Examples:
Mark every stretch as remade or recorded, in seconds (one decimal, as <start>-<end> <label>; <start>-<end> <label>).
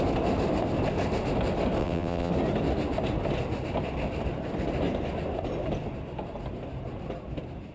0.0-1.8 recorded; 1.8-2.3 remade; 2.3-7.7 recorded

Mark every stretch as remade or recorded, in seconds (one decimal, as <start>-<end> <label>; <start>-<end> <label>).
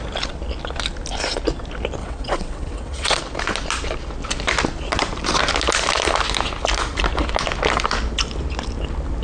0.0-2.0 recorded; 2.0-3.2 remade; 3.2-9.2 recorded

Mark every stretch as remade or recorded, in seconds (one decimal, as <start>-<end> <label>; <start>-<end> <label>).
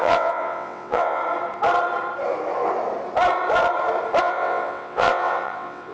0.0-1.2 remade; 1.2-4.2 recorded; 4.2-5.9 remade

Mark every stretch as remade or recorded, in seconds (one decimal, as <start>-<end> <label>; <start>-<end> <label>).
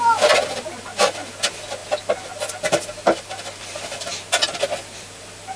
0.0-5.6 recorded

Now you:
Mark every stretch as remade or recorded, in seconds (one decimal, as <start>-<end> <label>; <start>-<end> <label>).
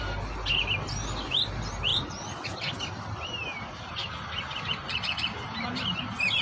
0.0-6.4 recorded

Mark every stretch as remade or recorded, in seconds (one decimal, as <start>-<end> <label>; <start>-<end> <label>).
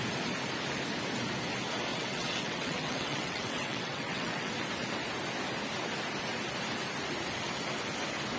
0.0-1.9 recorded; 1.9-4.5 remade; 4.5-8.4 recorded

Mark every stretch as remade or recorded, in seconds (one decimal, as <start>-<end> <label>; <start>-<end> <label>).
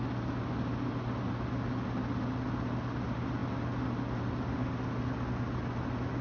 0.0-6.2 recorded